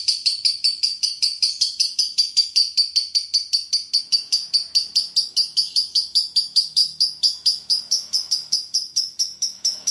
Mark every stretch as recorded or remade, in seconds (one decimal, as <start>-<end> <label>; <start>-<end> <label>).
0.0-2.6 remade; 2.6-4.0 recorded; 4.0-4.4 remade; 4.4-5.3 recorded; 5.3-9.9 remade